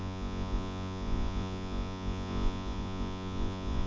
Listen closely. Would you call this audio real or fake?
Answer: fake